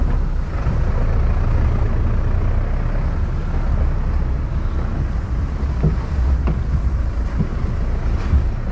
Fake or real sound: real